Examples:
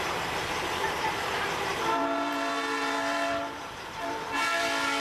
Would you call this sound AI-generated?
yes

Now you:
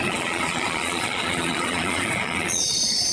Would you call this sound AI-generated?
yes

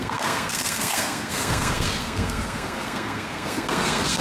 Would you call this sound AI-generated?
yes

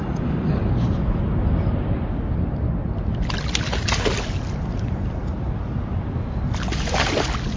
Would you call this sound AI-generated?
no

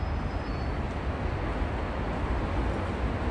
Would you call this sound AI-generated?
no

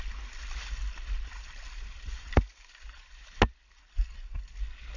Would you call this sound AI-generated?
no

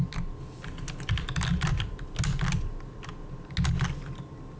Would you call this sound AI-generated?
no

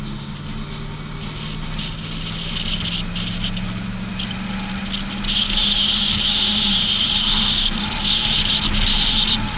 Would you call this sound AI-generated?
no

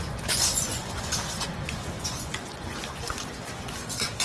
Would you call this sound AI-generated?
yes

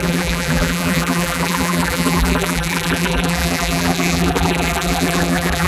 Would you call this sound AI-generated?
yes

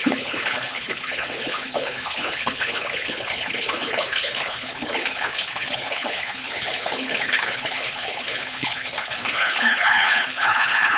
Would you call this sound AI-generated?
yes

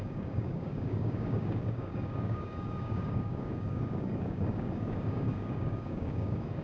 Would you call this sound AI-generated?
yes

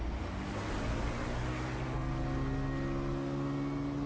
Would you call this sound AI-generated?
no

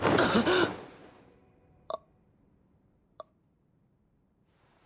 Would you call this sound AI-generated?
yes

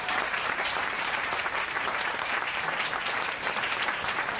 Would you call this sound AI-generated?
yes